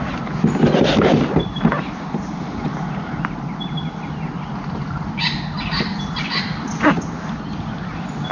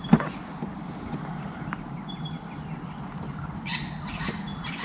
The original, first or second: first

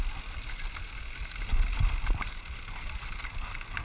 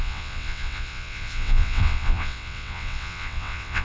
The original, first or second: first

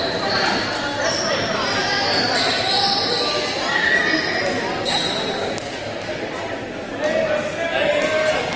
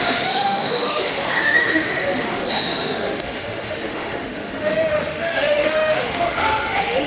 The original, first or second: first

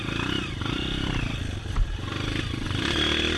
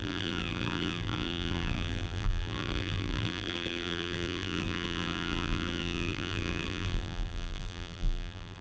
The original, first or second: first